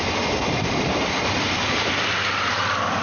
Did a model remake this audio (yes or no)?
yes